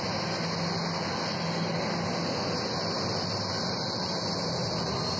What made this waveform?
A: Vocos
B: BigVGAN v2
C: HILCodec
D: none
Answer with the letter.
D